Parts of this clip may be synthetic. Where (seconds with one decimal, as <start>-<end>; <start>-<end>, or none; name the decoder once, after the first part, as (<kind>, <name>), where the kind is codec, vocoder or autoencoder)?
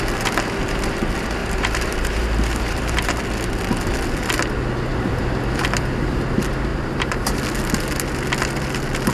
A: 1.4-3.2 (vocoder, BigVGAN v2); 4.9-5.6; 6.7-7.4